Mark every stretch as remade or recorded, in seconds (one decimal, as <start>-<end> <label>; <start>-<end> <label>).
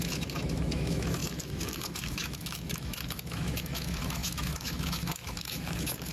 0.0-6.1 remade